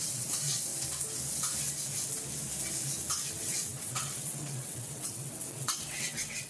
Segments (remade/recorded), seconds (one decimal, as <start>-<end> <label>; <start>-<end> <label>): 0.0-0.7 remade; 0.7-3.3 recorded; 3.3-6.5 remade